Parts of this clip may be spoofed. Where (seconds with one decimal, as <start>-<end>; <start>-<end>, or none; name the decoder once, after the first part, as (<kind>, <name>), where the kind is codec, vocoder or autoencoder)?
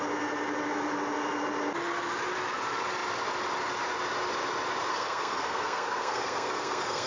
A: 4.9-7.1 (codec, SNAC)